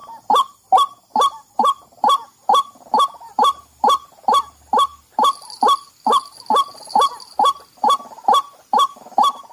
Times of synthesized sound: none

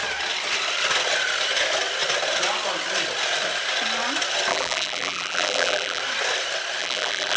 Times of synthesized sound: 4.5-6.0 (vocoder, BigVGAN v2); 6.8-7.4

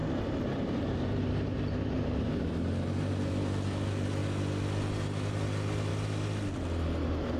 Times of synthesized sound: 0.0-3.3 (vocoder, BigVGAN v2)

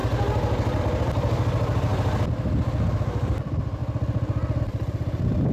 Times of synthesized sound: 0.8-1.9 (vocoder, BigVGAN v2); 3.0-3.8; 4.6-5.5

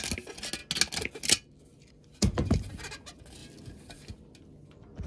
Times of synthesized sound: none

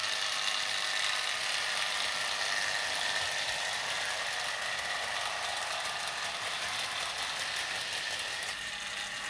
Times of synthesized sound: none

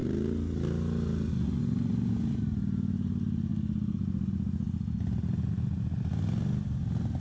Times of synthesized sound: none